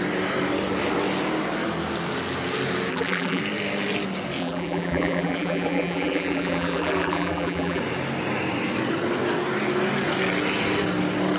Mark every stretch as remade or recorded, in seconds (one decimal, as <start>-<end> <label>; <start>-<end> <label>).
0.0-2.9 recorded; 2.9-3.4 remade; 3.4-4.4 recorded; 4.4-7.8 remade; 7.8-11.4 recorded